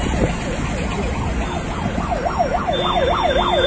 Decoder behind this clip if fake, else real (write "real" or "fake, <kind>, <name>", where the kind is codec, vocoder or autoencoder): real